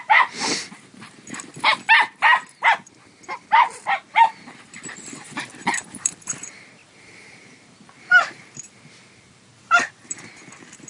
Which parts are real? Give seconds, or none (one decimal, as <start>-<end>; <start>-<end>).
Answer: 1.5-3.8